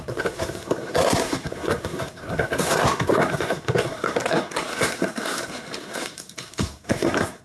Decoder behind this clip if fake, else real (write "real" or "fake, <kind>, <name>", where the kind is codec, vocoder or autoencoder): fake, codec, SNAC